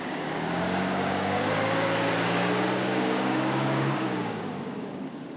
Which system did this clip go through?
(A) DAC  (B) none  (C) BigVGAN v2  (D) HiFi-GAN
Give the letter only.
A